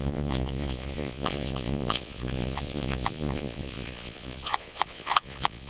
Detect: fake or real fake